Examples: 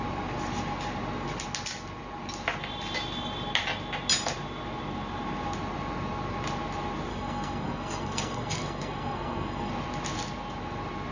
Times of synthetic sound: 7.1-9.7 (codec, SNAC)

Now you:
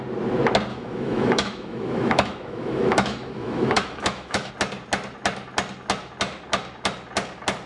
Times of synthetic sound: 0.7-4.5 (autoencoder, DAC-VAE)

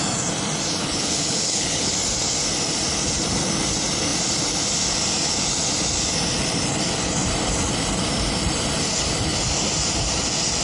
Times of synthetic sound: 0.8-1.9 (codec, HILCodec)